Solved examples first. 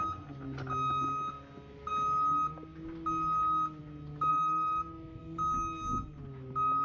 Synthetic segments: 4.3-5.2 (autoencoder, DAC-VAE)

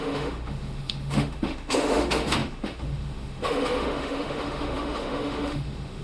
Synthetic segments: 0.0-6.0 (autoencoder, DAC-VAE)

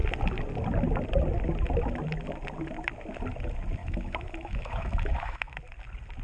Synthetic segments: 3.8-5.6 (autoencoder, DAC-VAE)